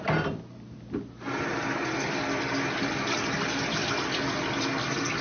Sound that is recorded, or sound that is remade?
recorded